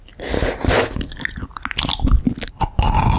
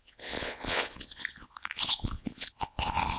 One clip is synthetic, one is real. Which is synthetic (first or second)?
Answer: second